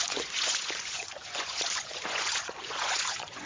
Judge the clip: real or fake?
fake